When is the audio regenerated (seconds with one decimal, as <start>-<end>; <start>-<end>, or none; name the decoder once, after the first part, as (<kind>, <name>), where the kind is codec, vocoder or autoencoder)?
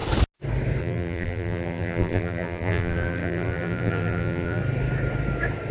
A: 0.8-4.6 (vocoder, BigVGAN v2)